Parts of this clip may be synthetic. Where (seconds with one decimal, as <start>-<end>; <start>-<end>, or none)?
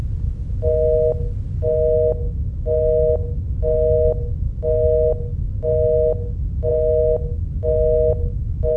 none